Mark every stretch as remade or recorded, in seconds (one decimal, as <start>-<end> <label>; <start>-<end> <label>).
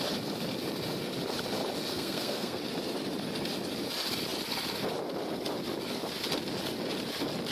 0.0-1.9 recorded; 1.9-2.6 remade; 2.6-7.5 recorded